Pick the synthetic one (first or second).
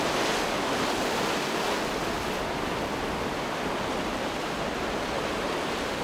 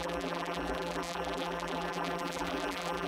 second